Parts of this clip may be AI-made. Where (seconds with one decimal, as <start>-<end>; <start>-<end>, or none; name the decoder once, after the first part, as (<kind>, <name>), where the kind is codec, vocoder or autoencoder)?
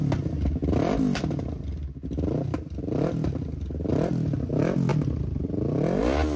none